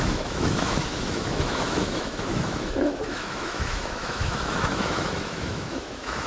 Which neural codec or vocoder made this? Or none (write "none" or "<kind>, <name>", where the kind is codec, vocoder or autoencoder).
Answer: autoencoder, DAC-VAE